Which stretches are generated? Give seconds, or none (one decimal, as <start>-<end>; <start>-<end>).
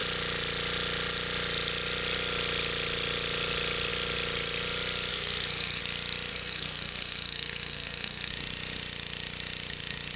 5.1-5.8; 6.3-8.3